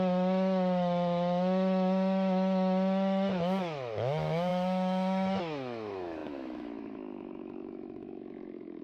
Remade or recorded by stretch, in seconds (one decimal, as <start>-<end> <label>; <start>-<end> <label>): 0.0-8.8 remade